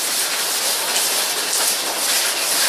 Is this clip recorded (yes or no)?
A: yes